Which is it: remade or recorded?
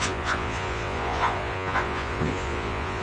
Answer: remade